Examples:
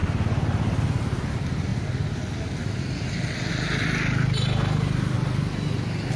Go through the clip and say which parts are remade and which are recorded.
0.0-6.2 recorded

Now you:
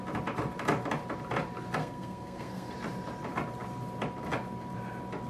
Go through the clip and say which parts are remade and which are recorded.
0.0-1.8 recorded; 1.8-2.7 remade; 2.7-5.3 recorded

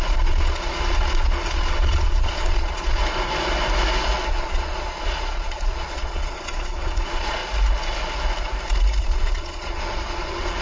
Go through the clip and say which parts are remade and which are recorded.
0.0-3.0 remade; 3.0-4.3 recorded; 4.3-7.4 remade; 7.4-9.0 recorded; 9.0-10.6 remade

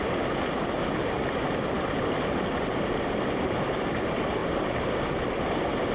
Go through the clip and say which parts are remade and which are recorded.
0.0-5.9 recorded

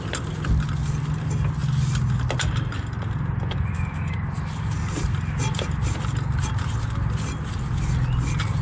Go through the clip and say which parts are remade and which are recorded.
0.0-8.6 recorded

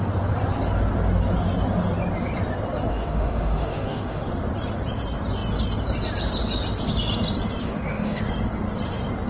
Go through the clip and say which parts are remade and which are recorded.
0.0-2.9 recorded; 2.9-4.2 remade; 4.2-7.6 recorded; 7.6-8.2 remade; 8.2-9.3 recorded

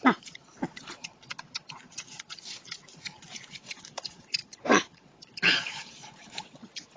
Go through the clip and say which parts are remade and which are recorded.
0.0-7.0 remade